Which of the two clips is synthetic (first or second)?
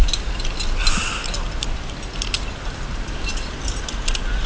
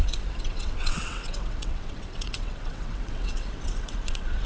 second